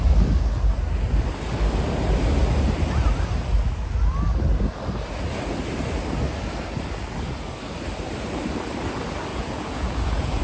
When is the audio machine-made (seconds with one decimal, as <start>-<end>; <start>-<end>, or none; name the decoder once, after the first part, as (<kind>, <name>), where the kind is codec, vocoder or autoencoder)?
9.3-10.4 (vocoder, Vocos)

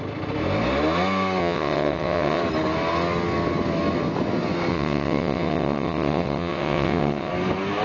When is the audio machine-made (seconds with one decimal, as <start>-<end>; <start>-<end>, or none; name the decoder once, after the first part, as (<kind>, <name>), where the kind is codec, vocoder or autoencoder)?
1.4-2.4 (vocoder, WaveNeXt); 4.7-7.3

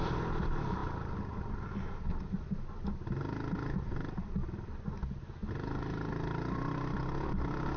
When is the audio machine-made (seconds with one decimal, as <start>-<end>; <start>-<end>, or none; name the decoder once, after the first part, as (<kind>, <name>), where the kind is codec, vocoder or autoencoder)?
none

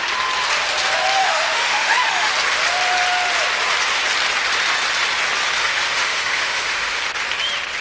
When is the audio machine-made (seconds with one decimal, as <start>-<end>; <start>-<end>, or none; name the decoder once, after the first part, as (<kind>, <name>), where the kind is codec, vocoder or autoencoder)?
1.2-2.3 (autoencoder, DAC-VAE); 5.6-7.0

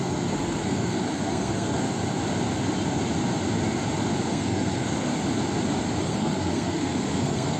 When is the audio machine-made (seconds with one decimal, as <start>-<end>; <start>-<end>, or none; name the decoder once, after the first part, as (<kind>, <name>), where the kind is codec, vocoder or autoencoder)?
0.0-2.0 (codec, SNAC); 4.3-5.1; 6.0-7.6

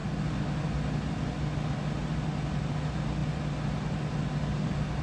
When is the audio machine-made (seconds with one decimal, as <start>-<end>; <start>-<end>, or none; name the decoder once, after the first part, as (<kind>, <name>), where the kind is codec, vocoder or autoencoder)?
none

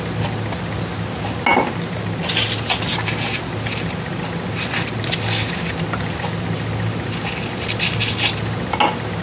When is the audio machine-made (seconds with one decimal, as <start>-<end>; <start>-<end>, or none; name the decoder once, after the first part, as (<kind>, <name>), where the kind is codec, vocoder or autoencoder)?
none

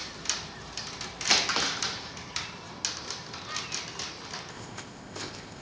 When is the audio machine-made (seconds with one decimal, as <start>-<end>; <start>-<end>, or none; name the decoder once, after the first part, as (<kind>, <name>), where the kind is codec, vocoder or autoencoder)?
4.5-5.6 (codec, ZipCodec)